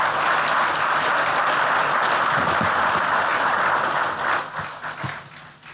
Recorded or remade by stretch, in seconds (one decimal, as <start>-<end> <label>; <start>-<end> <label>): 0.0-5.7 recorded